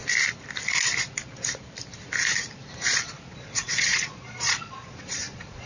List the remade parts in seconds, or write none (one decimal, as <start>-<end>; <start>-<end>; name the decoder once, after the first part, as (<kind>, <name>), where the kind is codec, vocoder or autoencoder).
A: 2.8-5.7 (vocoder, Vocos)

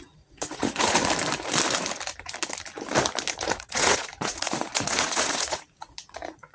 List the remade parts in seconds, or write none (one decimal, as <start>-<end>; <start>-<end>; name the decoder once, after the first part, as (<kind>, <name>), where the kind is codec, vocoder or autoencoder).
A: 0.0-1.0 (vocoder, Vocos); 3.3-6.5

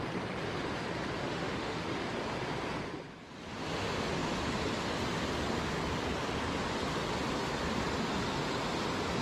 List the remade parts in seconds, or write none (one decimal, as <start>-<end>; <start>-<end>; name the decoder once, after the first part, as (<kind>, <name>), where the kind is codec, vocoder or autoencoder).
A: 1.2-1.8 (autoencoder, DAC-VAE)

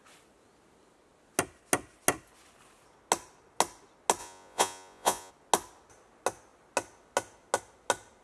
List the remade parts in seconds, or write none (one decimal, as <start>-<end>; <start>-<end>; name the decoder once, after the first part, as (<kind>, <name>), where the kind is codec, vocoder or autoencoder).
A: 4.2-5.3 (vocoder, Vocos)

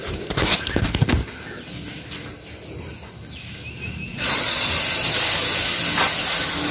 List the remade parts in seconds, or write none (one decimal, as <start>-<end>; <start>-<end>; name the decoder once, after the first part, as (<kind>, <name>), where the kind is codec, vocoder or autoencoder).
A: 4.1-4.7 (vocoder, Vocos)

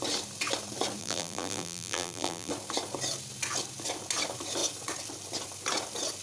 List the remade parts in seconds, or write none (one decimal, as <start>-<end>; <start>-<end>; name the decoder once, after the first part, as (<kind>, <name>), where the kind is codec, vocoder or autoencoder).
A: 1.0-2.5 (vocoder, BigVGAN v2)

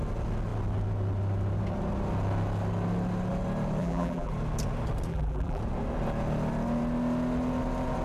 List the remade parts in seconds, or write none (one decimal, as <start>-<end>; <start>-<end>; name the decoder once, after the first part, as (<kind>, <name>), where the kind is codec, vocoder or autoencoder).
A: 3.8-4.3 (vocoder, BigVGAN v2); 5.1-5.6

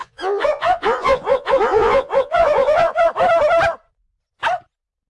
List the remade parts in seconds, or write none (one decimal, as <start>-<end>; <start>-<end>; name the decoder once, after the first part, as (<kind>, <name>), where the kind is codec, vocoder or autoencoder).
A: 0.0-3.1 (vocoder, Vocos)